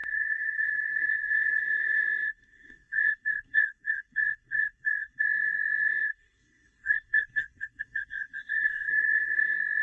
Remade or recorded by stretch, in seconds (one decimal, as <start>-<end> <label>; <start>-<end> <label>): 0.0-9.8 remade